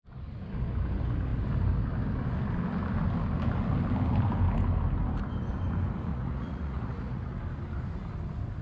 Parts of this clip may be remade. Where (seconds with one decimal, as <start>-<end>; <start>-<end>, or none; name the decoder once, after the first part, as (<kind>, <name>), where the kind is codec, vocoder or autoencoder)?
6.1-7.4 (vocoder, Vocos)